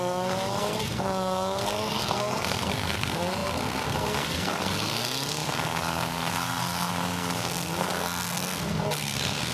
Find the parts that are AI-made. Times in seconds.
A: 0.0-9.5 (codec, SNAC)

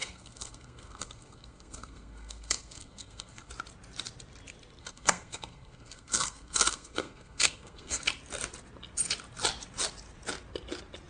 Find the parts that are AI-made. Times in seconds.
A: 0.0-3.5 (codec, SNAC); 4.8-8.0